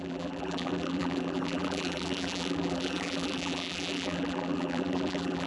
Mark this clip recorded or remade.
remade